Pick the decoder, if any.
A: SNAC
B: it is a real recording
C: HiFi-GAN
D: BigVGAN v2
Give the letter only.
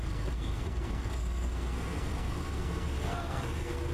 A